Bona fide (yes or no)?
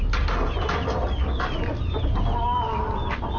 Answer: yes